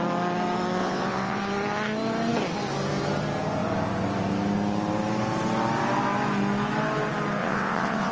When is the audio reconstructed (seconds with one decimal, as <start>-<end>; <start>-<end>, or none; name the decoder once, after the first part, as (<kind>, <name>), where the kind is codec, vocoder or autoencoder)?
0.8-1.4 (vocoder, WaveNeXt); 7.4-8.1